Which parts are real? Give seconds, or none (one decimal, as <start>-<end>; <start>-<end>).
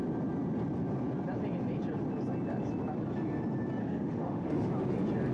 0.0-3.8; 4.7-5.3